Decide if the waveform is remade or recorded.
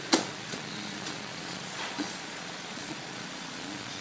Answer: remade